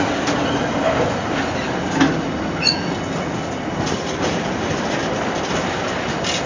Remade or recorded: recorded